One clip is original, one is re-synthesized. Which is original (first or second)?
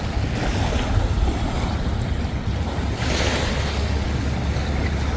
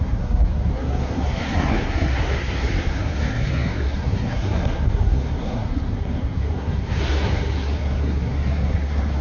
first